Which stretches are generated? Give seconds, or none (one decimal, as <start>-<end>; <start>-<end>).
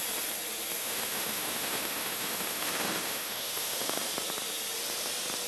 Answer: 0.8-4.1